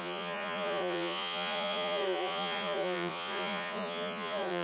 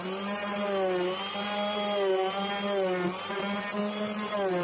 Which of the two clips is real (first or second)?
second